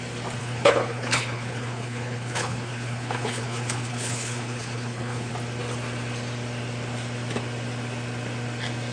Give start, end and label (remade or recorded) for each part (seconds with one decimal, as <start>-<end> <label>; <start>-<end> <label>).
0.0-0.4 recorded; 0.4-5.3 remade; 5.3-8.9 recorded